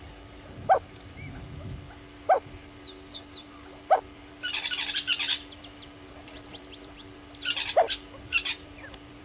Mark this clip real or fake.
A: fake